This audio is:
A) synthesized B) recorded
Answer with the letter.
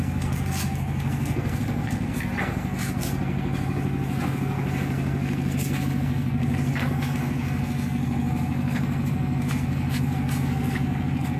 A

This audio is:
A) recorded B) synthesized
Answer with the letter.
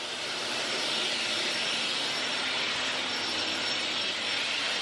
B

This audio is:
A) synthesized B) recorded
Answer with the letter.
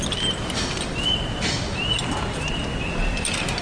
B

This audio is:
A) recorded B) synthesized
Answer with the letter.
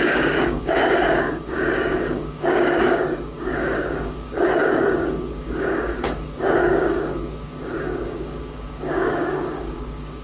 B